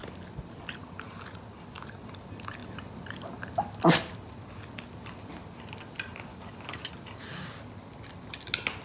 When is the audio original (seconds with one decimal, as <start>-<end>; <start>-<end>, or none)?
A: 0.0-6.3; 6.9-8.8